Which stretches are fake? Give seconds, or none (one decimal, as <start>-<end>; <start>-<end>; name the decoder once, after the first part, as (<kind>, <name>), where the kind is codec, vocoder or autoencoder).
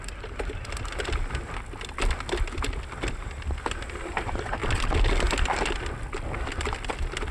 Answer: none